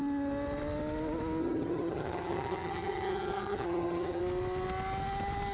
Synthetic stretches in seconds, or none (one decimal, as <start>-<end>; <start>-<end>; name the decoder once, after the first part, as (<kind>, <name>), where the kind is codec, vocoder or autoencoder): 1.4-4.2 (vocoder, HiFi-GAN)